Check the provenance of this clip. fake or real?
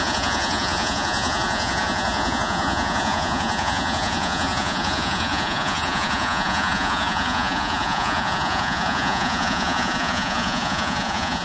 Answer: fake